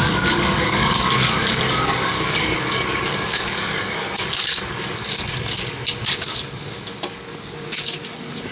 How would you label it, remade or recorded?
remade